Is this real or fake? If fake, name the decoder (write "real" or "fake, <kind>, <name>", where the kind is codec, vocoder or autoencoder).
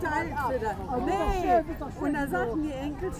real